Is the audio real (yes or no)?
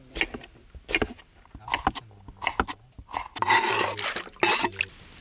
yes